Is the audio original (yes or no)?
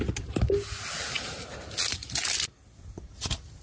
yes